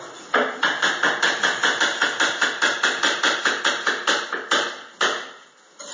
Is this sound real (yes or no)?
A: yes